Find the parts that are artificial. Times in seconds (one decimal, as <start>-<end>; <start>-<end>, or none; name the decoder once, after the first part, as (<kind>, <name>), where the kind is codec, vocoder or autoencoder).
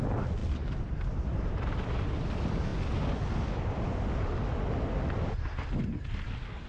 none